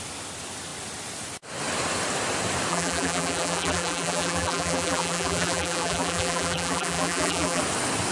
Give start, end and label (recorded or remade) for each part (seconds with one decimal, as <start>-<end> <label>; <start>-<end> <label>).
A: 0.0-2.7 recorded; 2.7-7.6 remade; 7.6-8.1 recorded